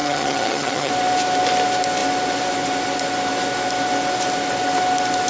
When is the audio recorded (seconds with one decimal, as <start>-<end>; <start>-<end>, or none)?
0.9-5.3